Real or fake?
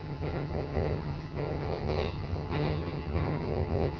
fake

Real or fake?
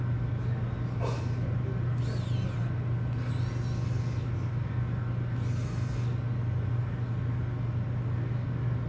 real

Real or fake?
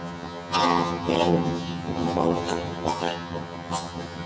fake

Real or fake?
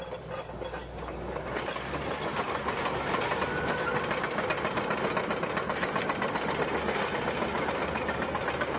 real